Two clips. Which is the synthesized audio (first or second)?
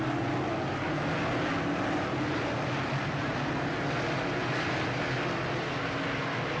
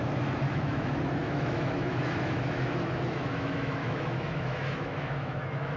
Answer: second